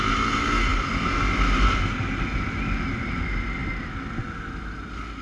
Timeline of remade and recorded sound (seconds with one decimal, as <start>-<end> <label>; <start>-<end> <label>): 0.0-5.2 recorded